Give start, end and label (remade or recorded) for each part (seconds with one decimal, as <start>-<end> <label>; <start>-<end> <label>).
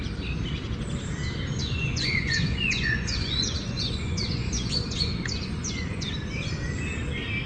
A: 0.0-1.6 recorded; 1.6-6.1 remade; 6.1-7.5 recorded